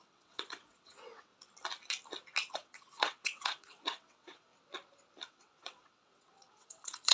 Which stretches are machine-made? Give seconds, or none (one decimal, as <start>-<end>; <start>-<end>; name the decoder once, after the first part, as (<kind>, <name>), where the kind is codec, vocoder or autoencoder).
0.0-1.3 (vocoder, WaveNeXt); 2.5-4.5; 5.3-7.1